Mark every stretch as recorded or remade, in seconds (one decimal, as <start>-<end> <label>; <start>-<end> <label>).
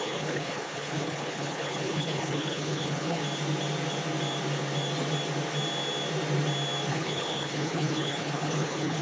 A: 0.0-3.2 remade; 3.2-6.9 recorded; 6.9-9.0 remade